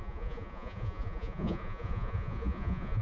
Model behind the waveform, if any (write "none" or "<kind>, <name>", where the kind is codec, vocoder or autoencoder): vocoder, Vocos